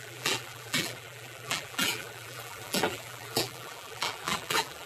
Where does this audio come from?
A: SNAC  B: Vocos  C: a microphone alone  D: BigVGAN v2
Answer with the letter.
D